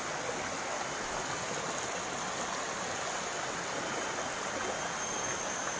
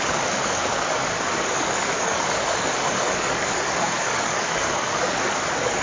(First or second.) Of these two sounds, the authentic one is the first